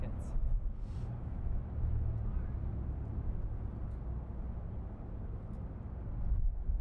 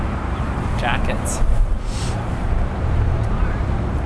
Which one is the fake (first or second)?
second